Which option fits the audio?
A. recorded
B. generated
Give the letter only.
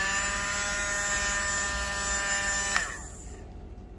A